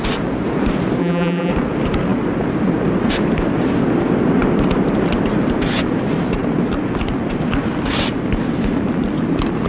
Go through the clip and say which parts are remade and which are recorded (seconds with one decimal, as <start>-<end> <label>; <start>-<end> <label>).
0.0-1.0 recorded; 1.0-1.5 remade; 1.5-9.7 recorded

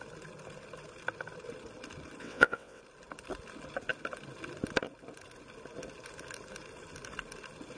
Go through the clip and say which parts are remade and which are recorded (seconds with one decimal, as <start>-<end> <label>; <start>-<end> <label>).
0.0-2.2 recorded; 2.2-2.8 remade; 2.8-7.8 recorded

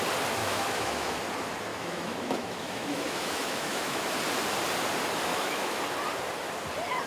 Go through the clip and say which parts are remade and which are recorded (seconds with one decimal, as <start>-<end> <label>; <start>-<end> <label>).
0.0-0.4 recorded; 0.4-1.2 remade; 1.2-1.7 recorded; 1.7-4.1 remade; 4.1-5.3 recorded; 5.3-5.8 remade; 5.8-7.1 recorded

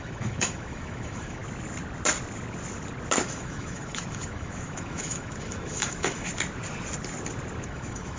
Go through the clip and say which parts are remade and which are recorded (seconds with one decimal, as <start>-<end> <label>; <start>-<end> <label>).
0.0-1.4 remade; 1.4-3.2 recorded; 3.2-6.3 remade; 6.3-7.6 recorded; 7.6-8.2 remade

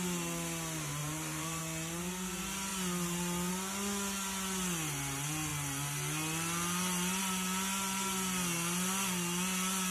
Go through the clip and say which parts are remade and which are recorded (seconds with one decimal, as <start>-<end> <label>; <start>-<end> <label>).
0.0-1.0 recorded; 1.0-1.6 remade; 1.6-9.9 recorded

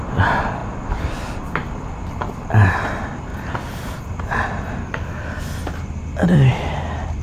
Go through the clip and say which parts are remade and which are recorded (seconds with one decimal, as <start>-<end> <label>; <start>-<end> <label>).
0.0-4.8 recorded; 4.8-5.4 remade; 5.4-7.2 recorded